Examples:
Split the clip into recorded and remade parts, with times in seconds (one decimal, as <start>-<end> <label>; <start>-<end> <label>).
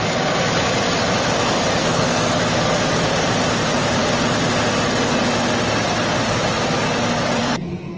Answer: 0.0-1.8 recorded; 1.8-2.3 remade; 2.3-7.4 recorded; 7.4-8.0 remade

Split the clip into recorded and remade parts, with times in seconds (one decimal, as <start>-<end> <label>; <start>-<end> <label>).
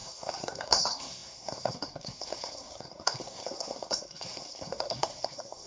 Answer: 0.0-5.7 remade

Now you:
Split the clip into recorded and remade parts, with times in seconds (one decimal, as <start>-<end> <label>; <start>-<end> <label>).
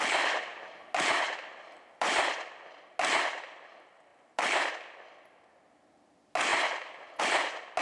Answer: 0.0-7.8 recorded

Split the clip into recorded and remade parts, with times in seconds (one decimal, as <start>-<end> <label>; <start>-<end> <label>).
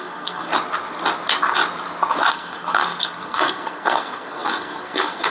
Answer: 0.0-0.5 remade; 0.5-2.3 recorded; 2.3-5.3 remade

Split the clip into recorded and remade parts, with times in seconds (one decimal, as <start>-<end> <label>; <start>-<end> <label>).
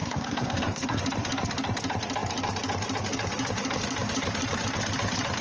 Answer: 0.0-1.0 remade; 1.0-5.4 recorded